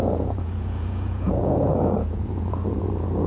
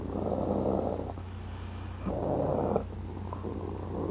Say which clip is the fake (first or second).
first